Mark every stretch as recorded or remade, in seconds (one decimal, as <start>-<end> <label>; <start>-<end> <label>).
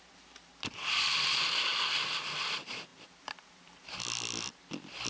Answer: 0.0-5.1 recorded